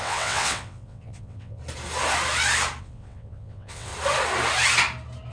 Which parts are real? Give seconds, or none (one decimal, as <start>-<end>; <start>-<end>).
1.6-2.8; 3.9-5.3

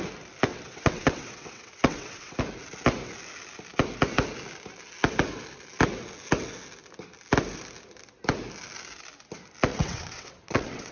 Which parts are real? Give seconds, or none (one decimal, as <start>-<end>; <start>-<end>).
0.0-0.5; 2.4-9.7

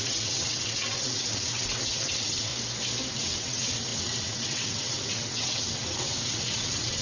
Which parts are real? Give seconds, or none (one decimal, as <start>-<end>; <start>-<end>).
2.5-3.1

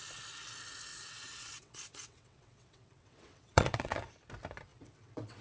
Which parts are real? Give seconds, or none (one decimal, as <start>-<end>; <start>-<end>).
0.0-0.9; 4.1-4.7

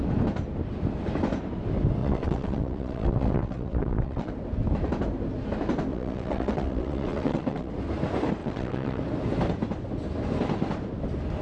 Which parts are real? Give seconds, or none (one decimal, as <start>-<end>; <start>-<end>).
0.0-2.0; 4.3-5.9; 7.7-8.4; 9.0-11.4

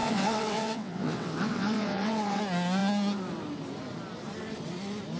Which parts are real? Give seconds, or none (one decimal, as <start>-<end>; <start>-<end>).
2.4-5.2

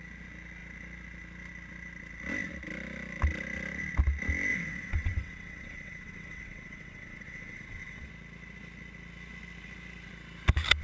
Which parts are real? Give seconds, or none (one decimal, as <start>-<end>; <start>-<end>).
0.0-4.5; 8.1-10.8